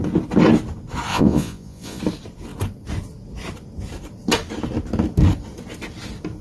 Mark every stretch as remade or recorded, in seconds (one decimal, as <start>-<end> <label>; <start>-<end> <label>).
0.0-1.1 recorded; 1.1-2.0 remade; 2.0-6.4 recorded